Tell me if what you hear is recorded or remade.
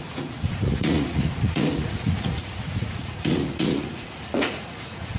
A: remade